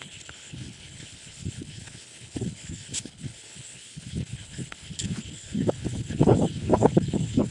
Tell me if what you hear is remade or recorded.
remade